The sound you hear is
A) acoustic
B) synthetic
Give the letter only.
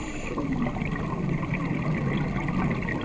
A